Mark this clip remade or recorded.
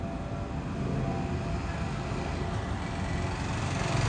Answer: recorded